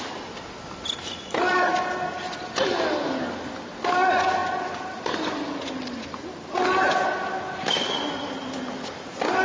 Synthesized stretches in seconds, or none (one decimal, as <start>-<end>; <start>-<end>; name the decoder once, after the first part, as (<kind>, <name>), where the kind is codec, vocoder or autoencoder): none